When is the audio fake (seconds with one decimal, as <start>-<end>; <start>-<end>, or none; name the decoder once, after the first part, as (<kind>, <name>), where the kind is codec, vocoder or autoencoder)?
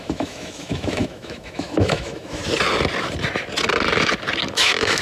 0.0-2.4 (autoencoder, DAC-VAE); 4.5-5.0